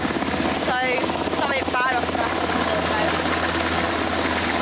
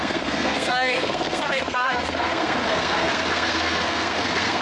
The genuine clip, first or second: first